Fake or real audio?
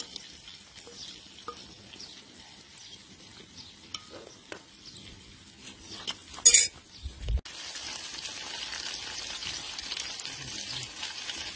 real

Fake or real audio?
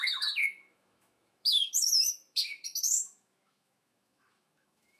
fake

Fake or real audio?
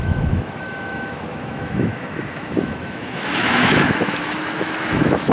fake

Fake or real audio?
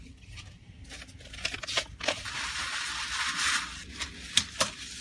real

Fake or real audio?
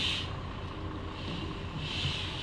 real